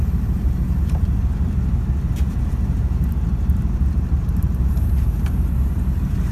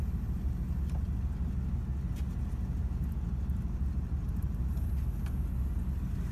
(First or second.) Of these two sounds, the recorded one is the second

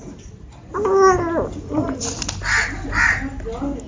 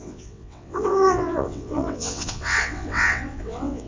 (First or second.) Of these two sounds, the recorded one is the first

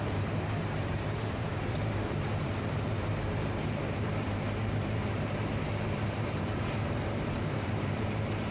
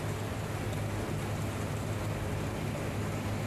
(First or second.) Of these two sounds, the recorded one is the second